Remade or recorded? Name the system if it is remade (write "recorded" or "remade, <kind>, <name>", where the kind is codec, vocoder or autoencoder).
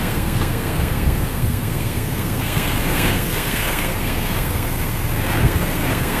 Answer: remade, codec, SNAC